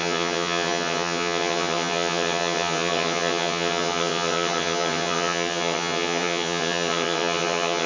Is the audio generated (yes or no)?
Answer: yes